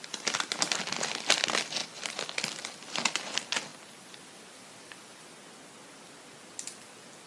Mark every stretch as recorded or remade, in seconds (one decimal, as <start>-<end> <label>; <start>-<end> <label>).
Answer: 0.0-7.3 recorded